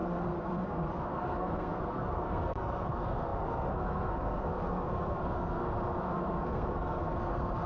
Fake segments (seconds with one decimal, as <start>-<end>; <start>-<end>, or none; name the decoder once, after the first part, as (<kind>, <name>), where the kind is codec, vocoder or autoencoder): 0.0-7.7 (codec, SNAC)